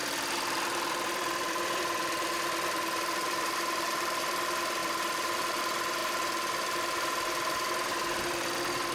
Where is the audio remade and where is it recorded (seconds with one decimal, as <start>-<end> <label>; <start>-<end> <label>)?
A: 0.0-4.2 remade; 4.2-4.8 recorded; 4.8-5.6 remade; 5.6-8.9 recorded